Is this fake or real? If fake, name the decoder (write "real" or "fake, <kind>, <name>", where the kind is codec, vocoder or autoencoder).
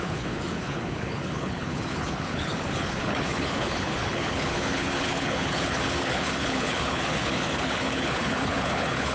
fake, codec, HILCodec